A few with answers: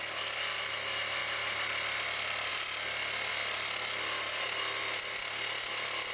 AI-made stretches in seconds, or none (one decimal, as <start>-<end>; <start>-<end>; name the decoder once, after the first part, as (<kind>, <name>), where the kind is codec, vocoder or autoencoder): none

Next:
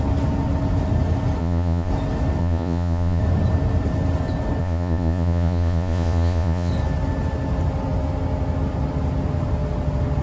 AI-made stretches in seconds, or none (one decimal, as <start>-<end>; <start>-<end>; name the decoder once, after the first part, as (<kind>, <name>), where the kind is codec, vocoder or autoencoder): 1.4-1.9 (vocoder, Vocos); 2.4-3.2; 4.6-6.7

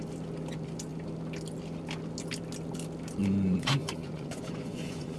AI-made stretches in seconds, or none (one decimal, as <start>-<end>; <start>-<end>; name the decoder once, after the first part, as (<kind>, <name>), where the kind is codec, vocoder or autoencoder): 3.2-5.2 (vocoder, Vocos)